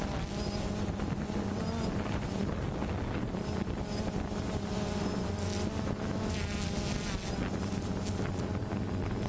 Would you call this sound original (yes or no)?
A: yes